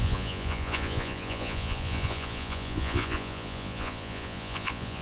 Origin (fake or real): fake